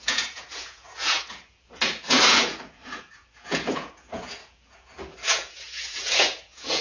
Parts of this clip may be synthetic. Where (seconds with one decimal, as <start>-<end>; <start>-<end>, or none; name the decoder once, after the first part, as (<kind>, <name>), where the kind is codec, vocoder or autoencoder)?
0.0-6.8 (vocoder, Vocos)